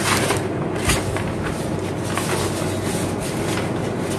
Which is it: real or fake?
real